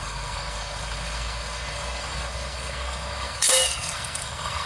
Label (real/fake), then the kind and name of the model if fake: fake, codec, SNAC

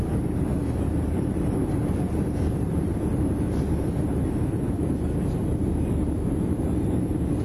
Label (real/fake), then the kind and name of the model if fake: fake, vocoder, BigVGAN v2